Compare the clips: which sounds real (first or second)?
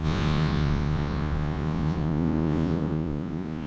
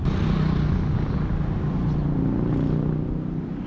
second